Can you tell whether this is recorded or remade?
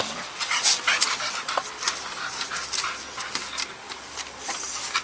recorded